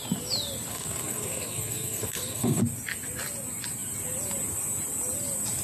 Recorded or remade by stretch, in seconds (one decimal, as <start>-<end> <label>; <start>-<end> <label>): 0.0-0.7 recorded; 0.7-2.6 remade; 2.6-5.6 recorded